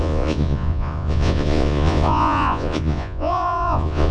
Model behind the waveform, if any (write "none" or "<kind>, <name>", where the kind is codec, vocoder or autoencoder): vocoder, Vocos